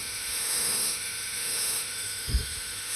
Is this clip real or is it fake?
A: fake